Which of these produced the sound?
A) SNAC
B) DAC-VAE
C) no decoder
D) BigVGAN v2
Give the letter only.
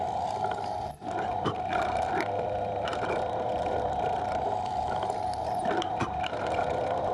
D